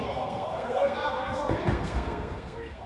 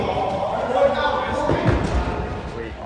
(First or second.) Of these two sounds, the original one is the second